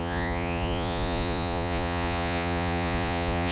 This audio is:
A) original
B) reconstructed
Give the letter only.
B